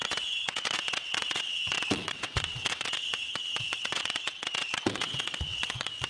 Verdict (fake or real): fake